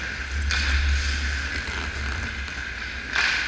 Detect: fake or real real